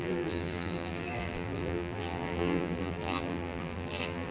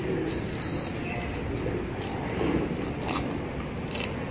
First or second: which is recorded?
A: second